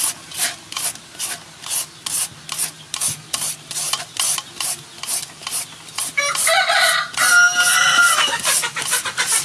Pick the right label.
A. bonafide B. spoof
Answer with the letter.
A